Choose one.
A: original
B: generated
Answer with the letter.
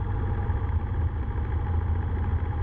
A